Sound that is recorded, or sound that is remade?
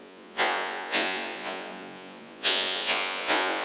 remade